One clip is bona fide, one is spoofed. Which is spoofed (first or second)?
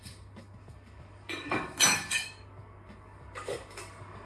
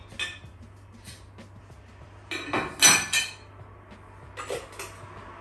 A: first